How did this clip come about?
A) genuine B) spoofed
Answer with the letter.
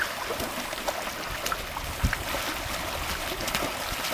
A